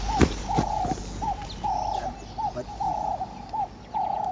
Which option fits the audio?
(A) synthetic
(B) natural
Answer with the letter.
B